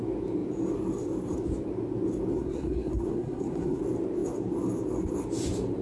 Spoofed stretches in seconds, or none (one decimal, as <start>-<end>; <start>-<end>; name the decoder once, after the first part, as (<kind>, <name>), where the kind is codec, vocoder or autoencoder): 2.3-3.8 (codec, SNAC)